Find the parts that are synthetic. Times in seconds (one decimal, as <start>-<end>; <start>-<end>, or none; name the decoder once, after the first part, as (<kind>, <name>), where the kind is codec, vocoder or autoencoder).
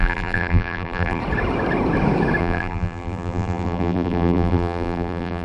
0.0-1.2 (vocoder, BigVGAN v2); 2.4-5.4